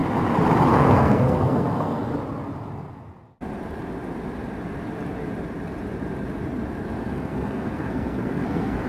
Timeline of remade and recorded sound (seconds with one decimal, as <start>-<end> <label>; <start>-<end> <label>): 0.0-0.7 recorded; 0.7-2.1 remade; 2.1-7.0 recorded; 7.0-8.9 remade